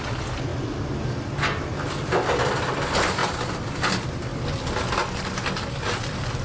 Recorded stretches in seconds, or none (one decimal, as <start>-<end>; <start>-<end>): 0.0-6.4